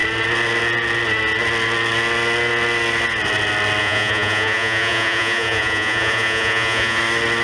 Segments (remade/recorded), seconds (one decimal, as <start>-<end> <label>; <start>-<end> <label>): 0.0-3.8 recorded; 3.8-7.0 remade; 7.0-7.4 recorded